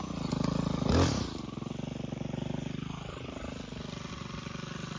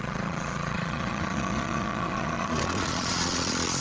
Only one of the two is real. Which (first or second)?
first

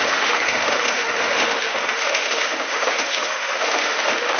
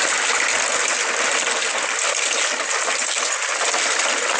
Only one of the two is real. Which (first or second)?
second